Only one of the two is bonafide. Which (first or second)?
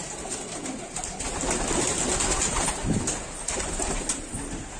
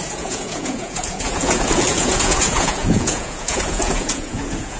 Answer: first